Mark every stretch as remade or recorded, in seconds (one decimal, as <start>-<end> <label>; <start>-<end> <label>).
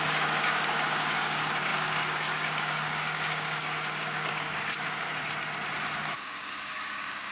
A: 0.0-5.1 remade; 5.1-6.0 recorded; 6.0-7.3 remade